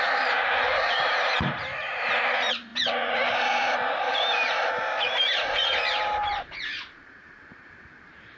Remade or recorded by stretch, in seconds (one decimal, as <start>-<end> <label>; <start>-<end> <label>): 0.0-8.4 remade